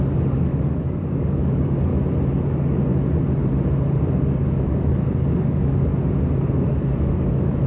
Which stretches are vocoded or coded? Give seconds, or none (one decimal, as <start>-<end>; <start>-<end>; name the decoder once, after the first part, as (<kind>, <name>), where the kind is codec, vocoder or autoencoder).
0.0-1.9 (codec, DAC); 2.4-2.9; 3.9-5.9; 6.4-7.7